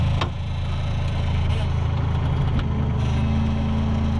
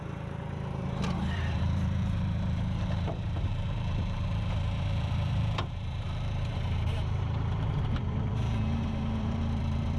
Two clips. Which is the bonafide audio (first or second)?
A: first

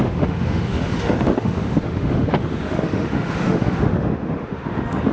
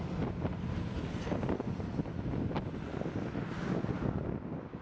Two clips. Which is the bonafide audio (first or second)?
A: second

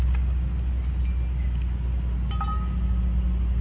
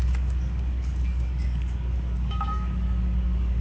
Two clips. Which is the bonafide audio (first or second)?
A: first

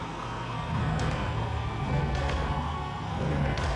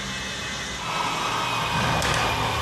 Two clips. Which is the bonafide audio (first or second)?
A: second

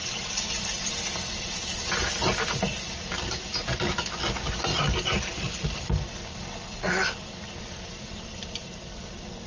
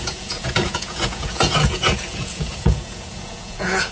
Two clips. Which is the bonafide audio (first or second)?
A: first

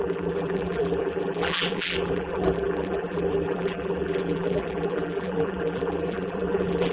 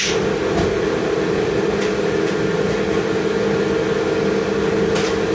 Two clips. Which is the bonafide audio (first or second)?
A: second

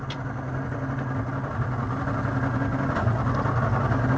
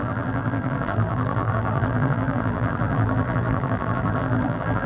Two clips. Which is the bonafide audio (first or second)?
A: first